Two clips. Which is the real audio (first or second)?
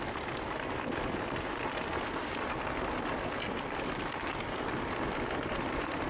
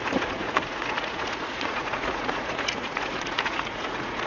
first